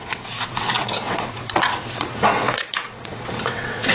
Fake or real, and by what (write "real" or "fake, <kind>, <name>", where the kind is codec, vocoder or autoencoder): fake, vocoder, WaveNeXt